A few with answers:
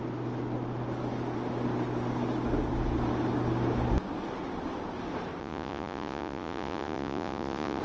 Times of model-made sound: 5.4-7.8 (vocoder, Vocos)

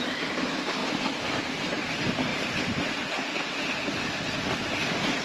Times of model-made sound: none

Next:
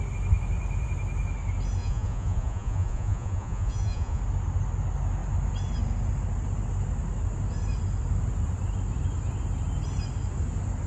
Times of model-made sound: 1.8-4.2 (vocoder, Vocos)

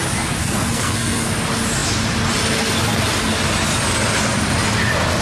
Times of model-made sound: 0.4-1.3 (codec, SNAC)